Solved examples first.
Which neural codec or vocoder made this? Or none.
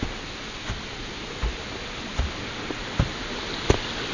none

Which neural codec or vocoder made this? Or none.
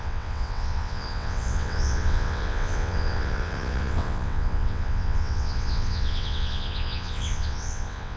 vocoder, WaveNeXt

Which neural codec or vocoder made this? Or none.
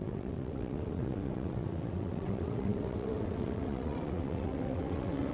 vocoder, WaveNeXt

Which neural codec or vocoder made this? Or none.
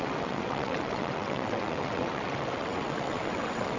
vocoder, WaveNeXt